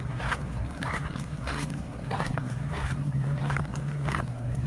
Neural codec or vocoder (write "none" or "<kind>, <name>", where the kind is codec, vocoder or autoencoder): codec, SNAC